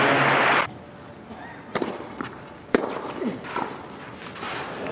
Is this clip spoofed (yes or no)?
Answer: no